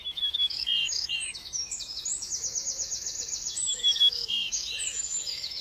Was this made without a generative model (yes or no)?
no